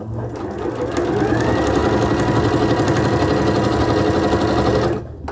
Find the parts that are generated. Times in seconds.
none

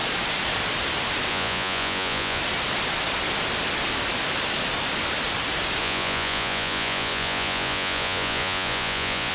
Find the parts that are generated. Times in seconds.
1.3-2.4 (vocoder, Vocos); 5.8-9.3

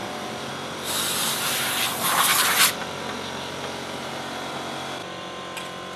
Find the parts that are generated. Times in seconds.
0.0-1.3 (vocoder, BigVGAN v2); 2.8-4.5; 5.0-6.0

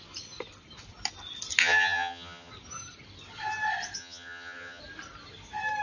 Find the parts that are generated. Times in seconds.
1.6-2.5 (vocoder, HiFi-GAN); 4.0-4.8

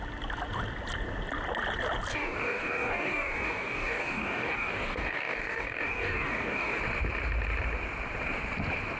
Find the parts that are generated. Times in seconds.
2.1-6.8 (codec, DAC)